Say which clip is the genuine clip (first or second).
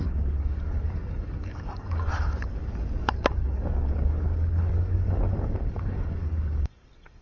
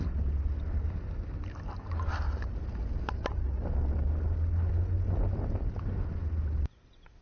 second